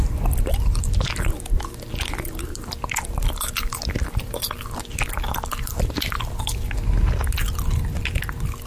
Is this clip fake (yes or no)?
no